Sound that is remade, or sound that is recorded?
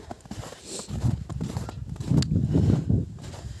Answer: recorded